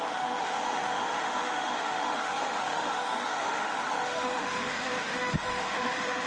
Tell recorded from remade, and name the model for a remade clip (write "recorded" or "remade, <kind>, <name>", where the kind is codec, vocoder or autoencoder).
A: remade, autoencoder, DAC-VAE